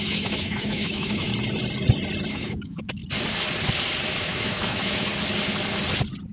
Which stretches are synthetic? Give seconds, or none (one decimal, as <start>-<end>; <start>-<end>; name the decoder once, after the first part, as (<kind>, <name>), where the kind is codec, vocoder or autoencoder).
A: 0.0-1.3 (autoencoder, DAC-VAE); 2.3-3.0; 4.2-5.1